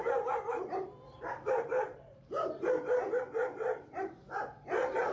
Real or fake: fake